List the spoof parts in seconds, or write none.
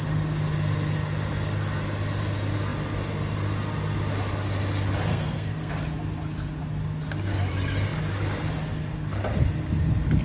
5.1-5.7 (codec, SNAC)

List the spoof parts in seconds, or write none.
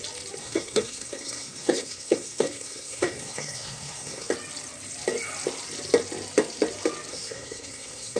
0.4-4.3 (codec, SNAC); 7.1-8.2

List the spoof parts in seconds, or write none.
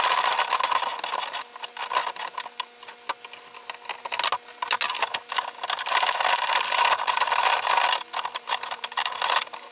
none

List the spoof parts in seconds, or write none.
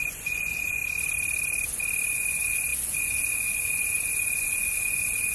0.0-0.8 (vocoder, Vocos); 2.1-5.3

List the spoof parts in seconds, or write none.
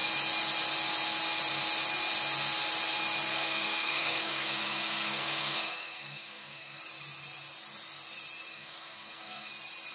3.3-6.8 (codec, SNAC); 8.5-9.5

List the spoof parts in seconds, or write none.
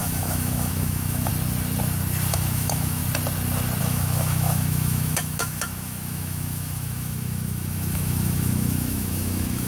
0.0-1.3 (autoencoder, DAC-VAE); 2.3-3.0; 3.8-9.7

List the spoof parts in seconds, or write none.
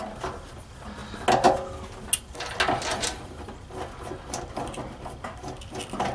none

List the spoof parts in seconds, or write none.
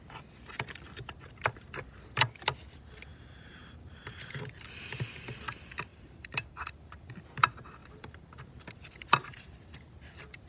3.1-4.4 (vocoder, BigVGAN v2); 5.9-7.1; 7.8-8.4